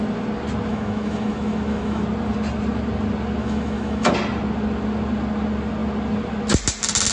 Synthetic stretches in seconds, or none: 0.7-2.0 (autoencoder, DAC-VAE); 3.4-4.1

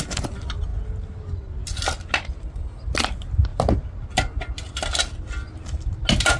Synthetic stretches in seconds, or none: none

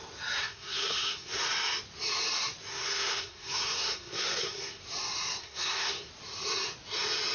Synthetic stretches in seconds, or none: 0.4-1.4 (codec, SNAC); 2.7-4.8; 5.4-6.1

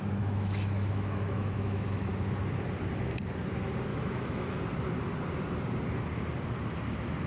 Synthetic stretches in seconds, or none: 0.0-2.1 (autoencoder, DAC-VAE); 3.9-4.6

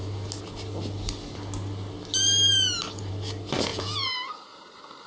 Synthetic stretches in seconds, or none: 3.7-4.3 (vocoder, Vocos)

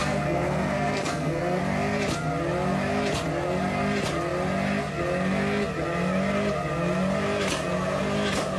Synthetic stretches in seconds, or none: 0.0-1.6 (codec, SNAC)

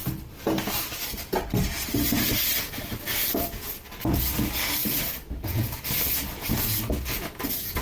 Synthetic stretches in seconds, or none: 3.2-4.0 (vocoder, Vocos); 4.8-7.8